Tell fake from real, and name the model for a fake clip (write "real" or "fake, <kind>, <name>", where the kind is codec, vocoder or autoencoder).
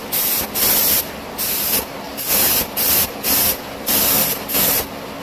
real